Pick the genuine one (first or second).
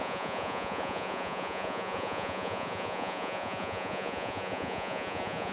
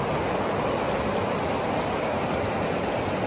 second